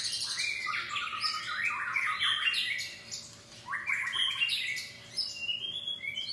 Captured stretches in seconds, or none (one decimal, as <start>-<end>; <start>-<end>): 0.0-6.3